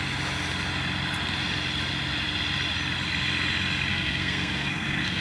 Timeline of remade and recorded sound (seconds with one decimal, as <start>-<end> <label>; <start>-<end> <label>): 0.0-3.9 recorded; 3.9-5.2 remade